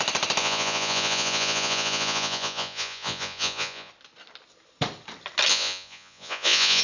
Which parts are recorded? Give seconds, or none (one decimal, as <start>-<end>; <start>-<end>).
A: 0.0-0.4; 3.9-5.5